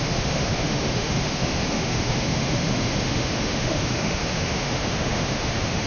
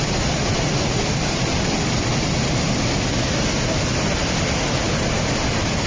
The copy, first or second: first